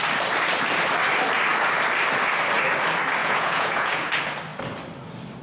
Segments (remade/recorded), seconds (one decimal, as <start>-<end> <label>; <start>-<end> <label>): 0.0-3.2 recorded; 3.2-4.1 remade; 4.1-5.4 recorded